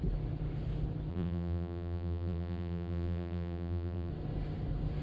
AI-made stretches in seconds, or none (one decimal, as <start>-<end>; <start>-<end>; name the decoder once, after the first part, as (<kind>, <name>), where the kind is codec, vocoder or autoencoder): 1.1-4.1 (vocoder, BigVGAN v2)